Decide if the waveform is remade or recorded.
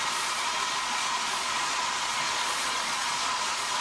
remade